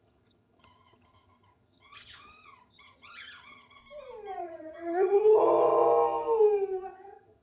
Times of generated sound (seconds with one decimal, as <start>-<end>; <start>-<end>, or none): 0.0-3.8; 4.4-5.4; 6.9-7.4